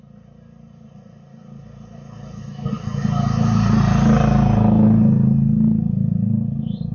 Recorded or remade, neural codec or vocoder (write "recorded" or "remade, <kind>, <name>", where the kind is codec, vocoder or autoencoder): recorded